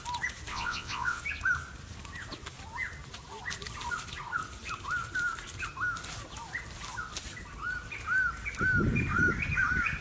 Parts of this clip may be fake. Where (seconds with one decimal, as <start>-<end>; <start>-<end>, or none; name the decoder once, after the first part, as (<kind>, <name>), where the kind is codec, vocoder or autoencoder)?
0.5-1.2 (vocoder, WaveNeXt)